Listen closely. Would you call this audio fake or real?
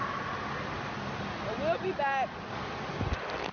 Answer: real